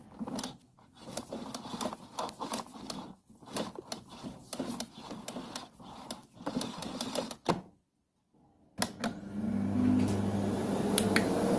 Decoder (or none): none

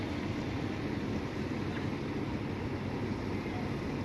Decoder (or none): none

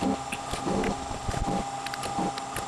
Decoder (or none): none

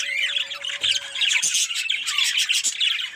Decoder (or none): none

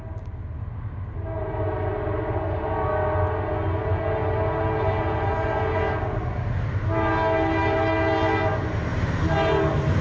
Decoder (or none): none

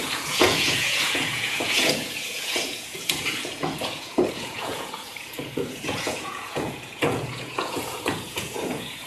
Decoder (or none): vocoder, Vocos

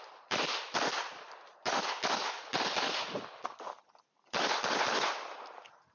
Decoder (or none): none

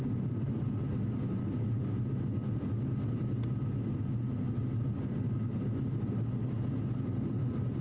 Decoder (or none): none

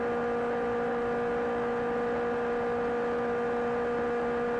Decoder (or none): none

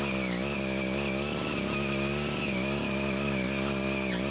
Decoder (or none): none